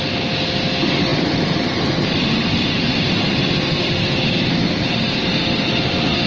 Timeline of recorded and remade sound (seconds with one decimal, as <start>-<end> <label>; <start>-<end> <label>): 0.0-6.3 recorded